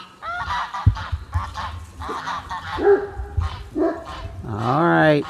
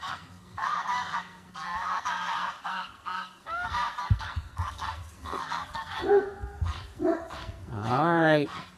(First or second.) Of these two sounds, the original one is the first